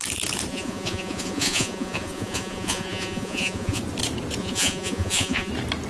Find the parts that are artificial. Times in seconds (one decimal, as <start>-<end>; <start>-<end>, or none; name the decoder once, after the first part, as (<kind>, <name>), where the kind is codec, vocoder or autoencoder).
0.5-3.8 (vocoder, Vocos); 4.4-5.5